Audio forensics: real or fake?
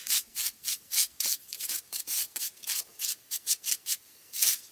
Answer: fake